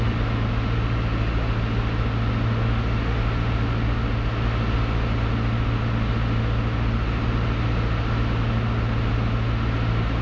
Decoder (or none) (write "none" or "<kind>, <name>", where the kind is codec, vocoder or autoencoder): none